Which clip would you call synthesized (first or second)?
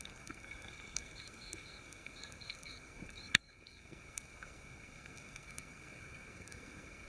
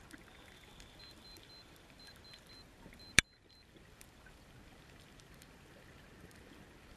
first